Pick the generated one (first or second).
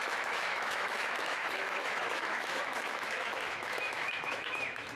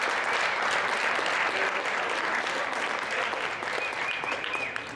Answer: first